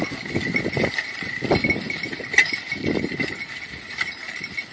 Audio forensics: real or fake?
real